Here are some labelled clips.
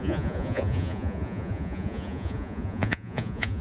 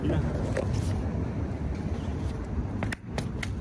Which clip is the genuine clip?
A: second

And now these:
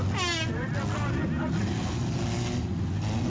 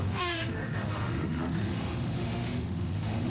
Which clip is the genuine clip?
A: first